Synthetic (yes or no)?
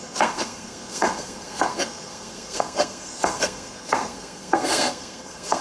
yes